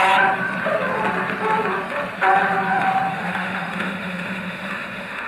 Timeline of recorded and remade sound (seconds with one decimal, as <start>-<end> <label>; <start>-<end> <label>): 0.0-3.1 recorded; 3.1-5.3 remade